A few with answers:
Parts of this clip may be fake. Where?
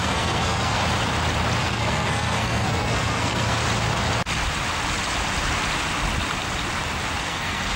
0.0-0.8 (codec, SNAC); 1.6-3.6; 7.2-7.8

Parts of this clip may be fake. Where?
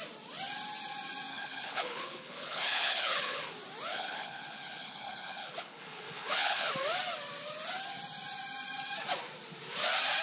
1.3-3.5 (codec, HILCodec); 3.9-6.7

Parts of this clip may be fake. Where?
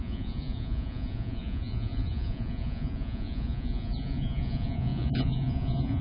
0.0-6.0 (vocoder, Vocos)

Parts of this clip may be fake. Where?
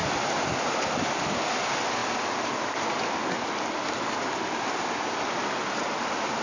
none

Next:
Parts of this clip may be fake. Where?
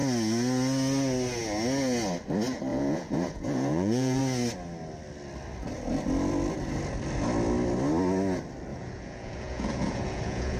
2.7-4.2 (vocoder, Vocos); 8.7-10.6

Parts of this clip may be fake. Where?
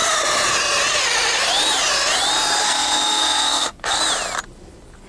2.6-4.0 (codec, SNAC)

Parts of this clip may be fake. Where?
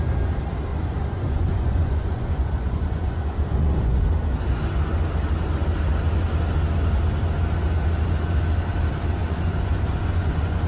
0.7-4.0 (vocoder, Vocos); 9.2-10.7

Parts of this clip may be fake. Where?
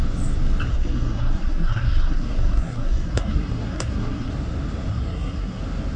0.7-4.3 (codec, SNAC); 4.9-5.6